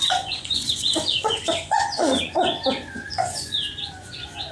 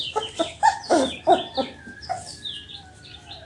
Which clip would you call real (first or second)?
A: second